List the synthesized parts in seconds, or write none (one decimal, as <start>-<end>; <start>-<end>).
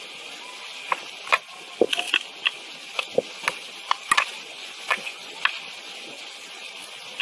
4.5-5.3